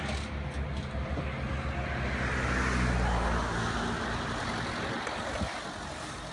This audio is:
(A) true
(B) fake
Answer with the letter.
A